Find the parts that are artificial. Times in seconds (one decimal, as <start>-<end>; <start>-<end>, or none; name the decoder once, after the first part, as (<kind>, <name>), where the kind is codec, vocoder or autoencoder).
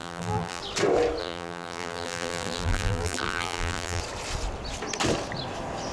0.0-0.6 (vocoder, BigVGAN v2); 1.2-4.0